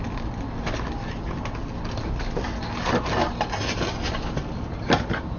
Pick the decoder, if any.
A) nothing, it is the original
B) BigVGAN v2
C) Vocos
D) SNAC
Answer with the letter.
A